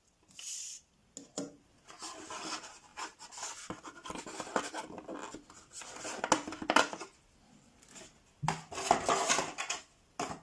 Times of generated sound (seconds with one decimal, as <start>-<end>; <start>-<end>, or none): none